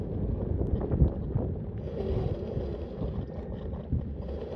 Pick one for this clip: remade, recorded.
recorded